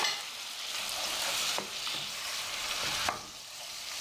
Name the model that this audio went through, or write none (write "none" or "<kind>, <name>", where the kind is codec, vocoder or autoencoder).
none